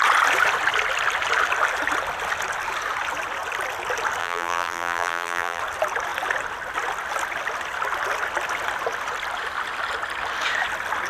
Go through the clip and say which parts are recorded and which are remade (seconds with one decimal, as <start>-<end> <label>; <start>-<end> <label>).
0.0-4.2 recorded; 4.2-5.6 remade; 5.6-11.1 recorded